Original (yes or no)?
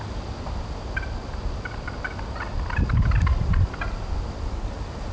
yes